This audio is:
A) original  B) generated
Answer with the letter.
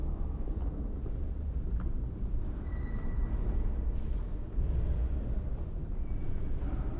A